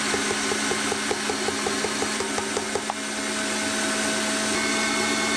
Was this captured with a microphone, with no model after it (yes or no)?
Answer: yes